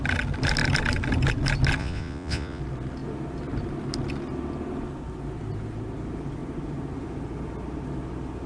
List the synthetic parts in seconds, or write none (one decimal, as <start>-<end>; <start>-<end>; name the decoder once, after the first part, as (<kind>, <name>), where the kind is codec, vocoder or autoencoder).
1.8-2.6 (vocoder, Vocos)